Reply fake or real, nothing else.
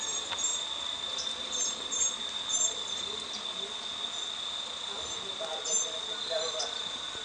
real